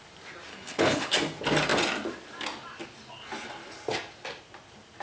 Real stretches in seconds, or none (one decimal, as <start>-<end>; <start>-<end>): 0.0-0.5; 1.1-5.0